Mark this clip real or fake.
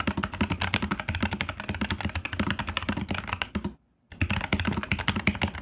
real